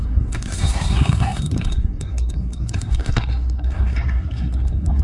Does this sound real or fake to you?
fake